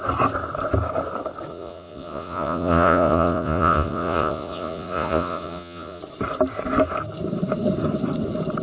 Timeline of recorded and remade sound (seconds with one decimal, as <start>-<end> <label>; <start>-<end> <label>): 0.0-1.5 recorded; 1.5-6.0 remade; 6.0-8.6 recorded

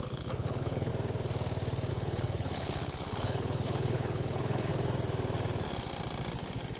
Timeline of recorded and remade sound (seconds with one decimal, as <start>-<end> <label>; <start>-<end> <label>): 0.0-0.9 remade; 0.9-1.9 recorded; 1.9-4.7 remade; 4.7-6.8 recorded

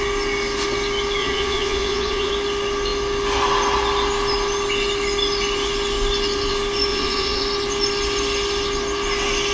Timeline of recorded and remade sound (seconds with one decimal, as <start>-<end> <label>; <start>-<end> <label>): 0.0-1.2 recorded; 1.2-2.3 remade; 2.3-6.9 recorded; 6.9-7.4 remade; 7.4-9.5 recorded

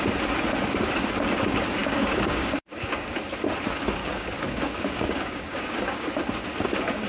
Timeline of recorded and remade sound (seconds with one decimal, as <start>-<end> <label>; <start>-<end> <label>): 0.0-1.8 recorded; 1.8-3.2 remade; 3.2-4.0 recorded; 4.0-6.1 remade; 6.1-7.1 recorded